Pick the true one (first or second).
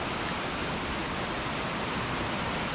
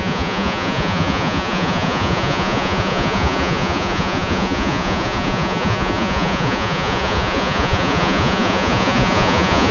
first